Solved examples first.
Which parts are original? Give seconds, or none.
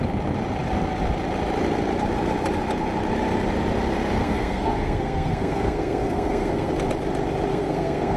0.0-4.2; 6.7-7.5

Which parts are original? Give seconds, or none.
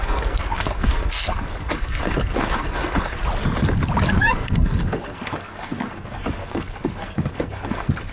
3.2-4.1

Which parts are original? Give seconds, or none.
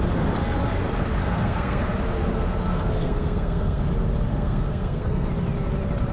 0.0-1.2; 1.8-2.7; 3.8-4.3; 5.3-6.1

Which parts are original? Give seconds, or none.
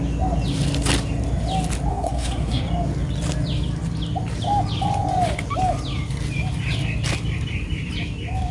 0.0-1.9; 2.6-8.5